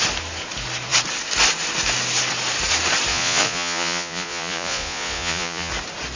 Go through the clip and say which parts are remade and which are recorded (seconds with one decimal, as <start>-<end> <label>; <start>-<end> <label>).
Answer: 0.0-3.1 recorded; 3.1-5.7 remade; 5.7-6.2 recorded